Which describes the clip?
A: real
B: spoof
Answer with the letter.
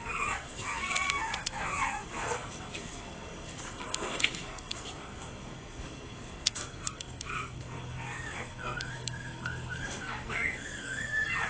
B